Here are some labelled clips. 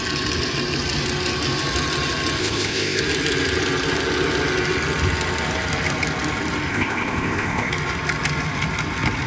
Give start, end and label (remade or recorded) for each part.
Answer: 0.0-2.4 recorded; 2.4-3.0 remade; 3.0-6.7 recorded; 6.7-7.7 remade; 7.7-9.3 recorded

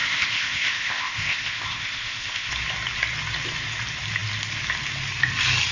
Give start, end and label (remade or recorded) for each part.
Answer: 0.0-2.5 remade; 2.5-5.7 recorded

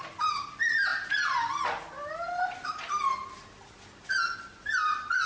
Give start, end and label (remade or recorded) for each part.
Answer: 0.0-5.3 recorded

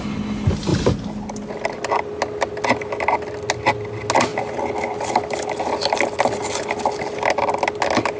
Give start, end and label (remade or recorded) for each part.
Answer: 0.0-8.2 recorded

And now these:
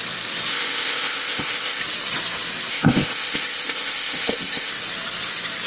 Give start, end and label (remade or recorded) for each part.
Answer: 0.0-0.5 recorded; 0.5-1.8 remade; 1.8-2.7 recorded; 2.7-4.7 remade; 4.7-5.7 recorded

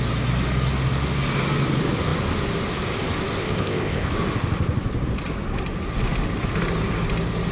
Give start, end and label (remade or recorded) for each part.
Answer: 0.0-3.4 recorded; 3.4-4.1 remade; 4.1-7.5 recorded

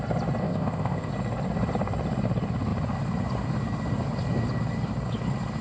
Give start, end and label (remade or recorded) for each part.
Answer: 0.0-0.4 recorded; 0.4-1.1 remade; 1.1-5.6 recorded

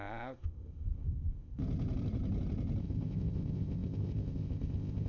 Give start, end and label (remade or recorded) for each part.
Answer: 0.0-1.6 remade; 1.6-2.8 recorded; 2.8-5.1 remade